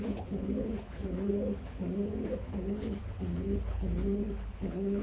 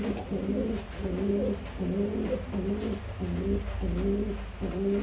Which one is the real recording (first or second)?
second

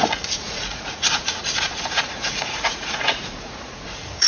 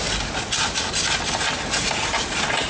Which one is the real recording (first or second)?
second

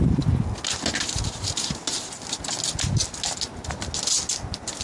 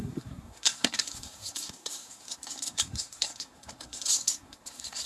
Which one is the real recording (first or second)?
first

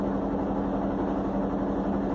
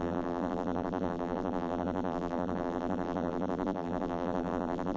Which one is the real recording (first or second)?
first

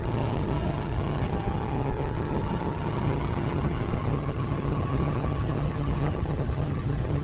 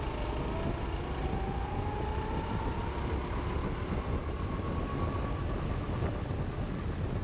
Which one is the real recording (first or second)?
second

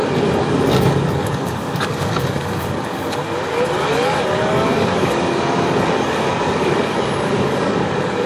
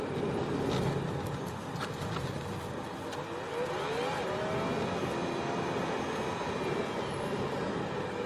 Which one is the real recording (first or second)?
second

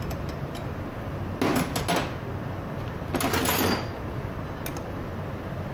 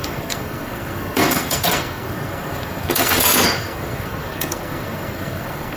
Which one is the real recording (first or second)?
first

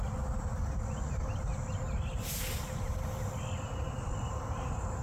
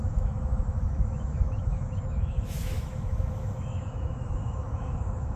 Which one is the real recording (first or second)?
first